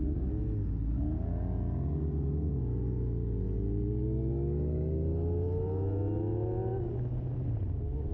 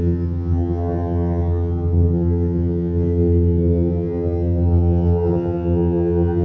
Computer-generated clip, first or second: second